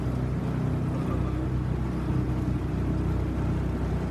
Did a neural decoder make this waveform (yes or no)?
no